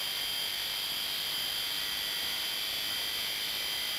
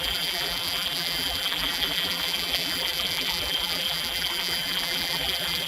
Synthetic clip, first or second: second